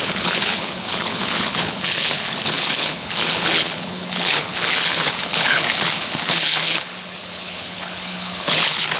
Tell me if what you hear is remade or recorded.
remade